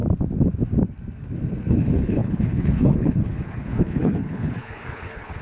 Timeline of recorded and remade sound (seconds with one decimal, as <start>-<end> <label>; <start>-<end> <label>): 0.0-1.7 recorded; 1.7-5.4 remade

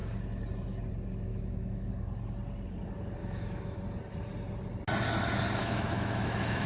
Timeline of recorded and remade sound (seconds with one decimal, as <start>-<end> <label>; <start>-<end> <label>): 0.0-1.3 recorded; 1.3-1.9 remade; 1.9-3.2 recorded; 3.2-3.8 remade; 3.8-5.6 recorded; 5.6-6.7 remade

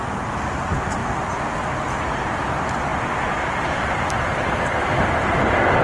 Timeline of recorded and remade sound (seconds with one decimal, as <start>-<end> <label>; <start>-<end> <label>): 0.0-5.8 recorded

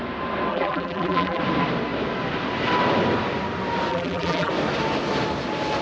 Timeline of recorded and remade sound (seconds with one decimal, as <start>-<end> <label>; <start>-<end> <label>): 0.0-0.5 recorded; 0.5-1.4 remade; 1.4-3.9 recorded; 3.9-4.5 remade; 4.5-5.8 recorded

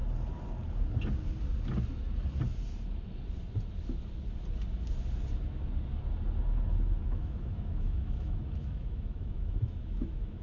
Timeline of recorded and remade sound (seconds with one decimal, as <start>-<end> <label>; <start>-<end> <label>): 0.0-7.0 recorded; 7.0-10.4 remade